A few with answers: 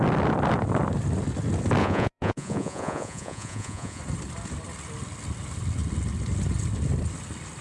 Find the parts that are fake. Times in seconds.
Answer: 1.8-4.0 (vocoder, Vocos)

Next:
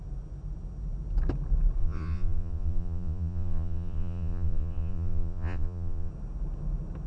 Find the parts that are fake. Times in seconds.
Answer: 1.8-6.1 (vocoder, Vocos)

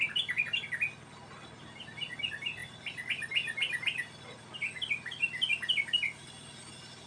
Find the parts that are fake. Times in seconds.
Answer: none

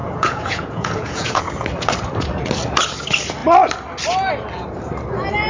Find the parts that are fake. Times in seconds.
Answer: 0.0-1.4 (vocoder, Vocos)

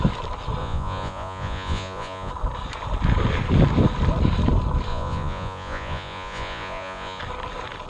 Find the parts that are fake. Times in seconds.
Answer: 0.6-2.3 (vocoder, Vocos); 4.9-7.2

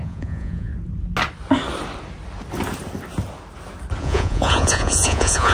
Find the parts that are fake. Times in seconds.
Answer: 0.0-0.7 (vocoder, Vocos); 4.0-5.5